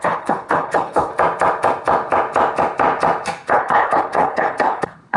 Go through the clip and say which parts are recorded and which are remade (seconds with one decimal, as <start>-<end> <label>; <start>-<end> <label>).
0.0-1.1 remade; 1.1-3.5 recorded; 3.5-5.2 remade